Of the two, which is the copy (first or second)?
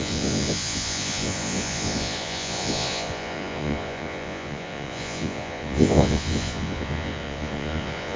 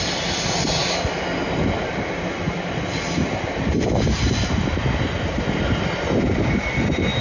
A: first